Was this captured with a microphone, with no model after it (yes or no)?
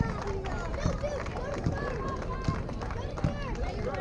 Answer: yes